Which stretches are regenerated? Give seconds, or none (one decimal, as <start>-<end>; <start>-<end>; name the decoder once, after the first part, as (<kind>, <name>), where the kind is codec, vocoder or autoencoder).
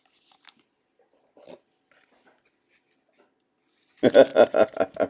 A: none